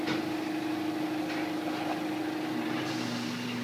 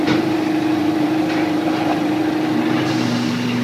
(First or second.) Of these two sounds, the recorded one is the first